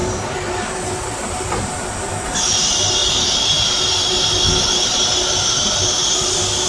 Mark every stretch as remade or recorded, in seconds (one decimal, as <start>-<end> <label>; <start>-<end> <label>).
0.0-1.9 remade; 1.9-6.7 recorded